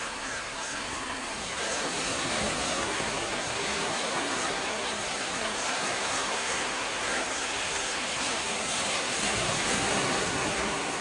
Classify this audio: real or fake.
fake